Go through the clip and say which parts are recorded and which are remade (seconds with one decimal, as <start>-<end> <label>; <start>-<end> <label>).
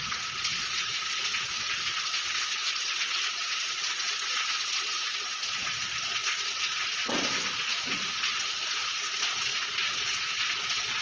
0.0-11.0 remade